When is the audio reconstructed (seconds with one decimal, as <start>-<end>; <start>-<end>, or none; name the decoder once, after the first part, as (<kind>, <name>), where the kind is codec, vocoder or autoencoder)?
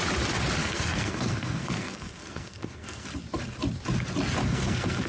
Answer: 0.6-3.1 (codec, SNAC); 4.4-5.1